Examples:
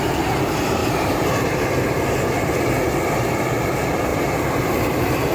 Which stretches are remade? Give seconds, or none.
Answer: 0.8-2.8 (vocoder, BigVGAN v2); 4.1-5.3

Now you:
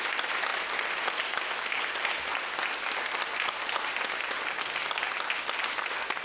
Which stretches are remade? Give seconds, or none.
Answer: none

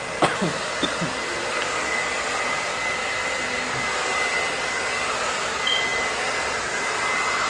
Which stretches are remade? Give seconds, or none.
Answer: none